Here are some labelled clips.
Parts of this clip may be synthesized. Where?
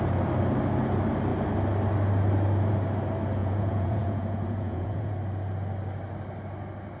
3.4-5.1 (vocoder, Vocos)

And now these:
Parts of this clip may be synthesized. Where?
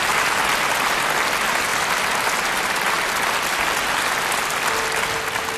none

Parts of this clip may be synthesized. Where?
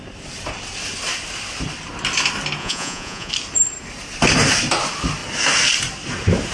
2.6-3.3 (vocoder, Vocos)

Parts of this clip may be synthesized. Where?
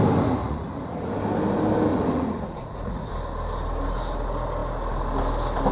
0.4-1.1 (vocoder, Vocos); 1.9-3.1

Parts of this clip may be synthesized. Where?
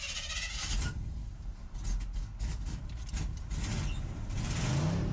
2.2-2.8 (codec, DAC)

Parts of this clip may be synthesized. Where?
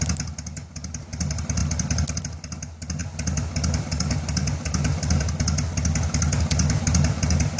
none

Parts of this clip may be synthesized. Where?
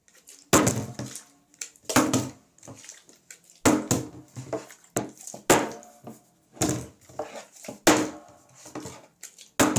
none